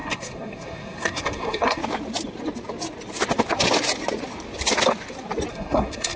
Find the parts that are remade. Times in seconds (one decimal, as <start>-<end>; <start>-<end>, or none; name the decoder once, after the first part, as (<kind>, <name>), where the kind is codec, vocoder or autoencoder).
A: 0.0-1.8 (codec, SNAC); 5.5-6.2